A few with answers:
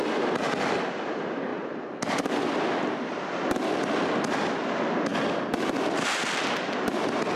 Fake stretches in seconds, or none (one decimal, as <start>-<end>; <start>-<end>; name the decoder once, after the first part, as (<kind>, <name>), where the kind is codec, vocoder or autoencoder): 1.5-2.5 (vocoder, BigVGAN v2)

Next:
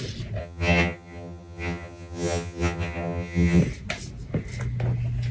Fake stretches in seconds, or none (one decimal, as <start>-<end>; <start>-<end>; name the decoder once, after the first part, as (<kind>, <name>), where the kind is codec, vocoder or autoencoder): 0.4-3.6 (vocoder, HiFi-GAN)

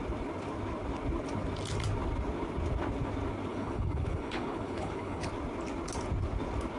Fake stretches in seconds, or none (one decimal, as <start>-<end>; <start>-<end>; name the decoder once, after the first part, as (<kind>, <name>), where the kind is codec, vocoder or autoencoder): 3.5-5.3 (codec, HILCodec)

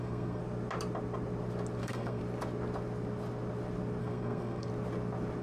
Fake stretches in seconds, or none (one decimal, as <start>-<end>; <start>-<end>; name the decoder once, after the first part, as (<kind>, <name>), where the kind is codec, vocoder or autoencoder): 0.0-0.4 (codec, SNAC); 1.8-2.2; 4.0-4.7